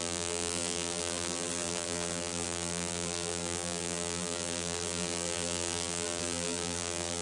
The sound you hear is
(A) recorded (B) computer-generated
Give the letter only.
B